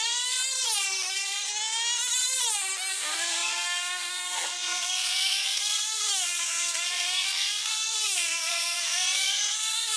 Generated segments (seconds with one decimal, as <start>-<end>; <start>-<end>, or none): 0.0-0.4; 1.1-1.5; 2.9-10.0